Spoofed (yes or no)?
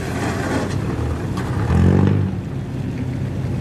no